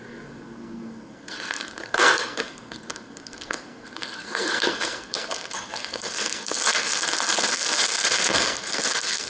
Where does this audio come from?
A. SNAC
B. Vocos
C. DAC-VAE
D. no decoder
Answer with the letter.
A